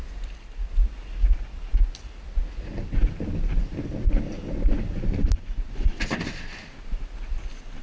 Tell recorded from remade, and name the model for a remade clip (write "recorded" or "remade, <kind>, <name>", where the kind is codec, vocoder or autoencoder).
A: recorded